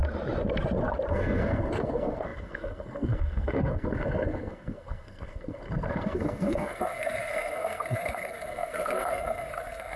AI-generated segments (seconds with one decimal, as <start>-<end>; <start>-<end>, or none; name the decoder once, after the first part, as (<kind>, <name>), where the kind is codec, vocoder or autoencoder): 1.1-10.0 (codec, SNAC)